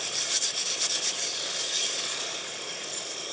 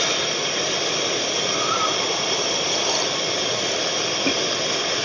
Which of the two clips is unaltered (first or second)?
second